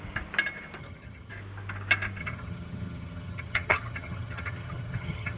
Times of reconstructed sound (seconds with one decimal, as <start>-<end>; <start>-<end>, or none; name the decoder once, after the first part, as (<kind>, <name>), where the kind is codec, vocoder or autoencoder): 0.8-1.3 (vocoder, HiFi-GAN); 2.2-5.4